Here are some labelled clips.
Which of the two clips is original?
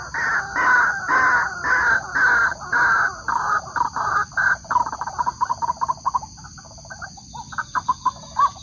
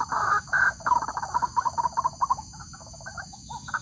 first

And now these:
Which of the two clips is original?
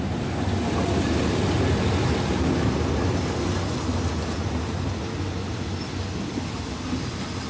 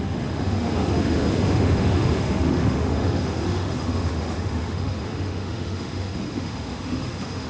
first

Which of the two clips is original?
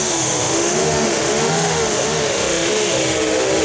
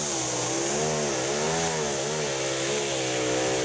second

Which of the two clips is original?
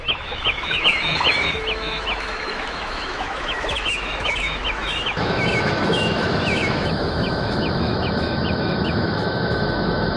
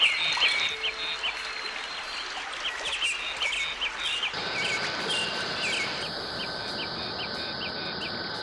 second